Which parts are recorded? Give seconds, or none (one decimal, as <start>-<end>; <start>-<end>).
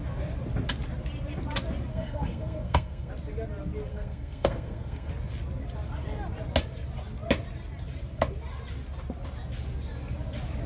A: 0.0-1.9; 3.1-3.9; 5.1-10.7